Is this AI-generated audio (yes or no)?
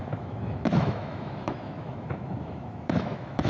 yes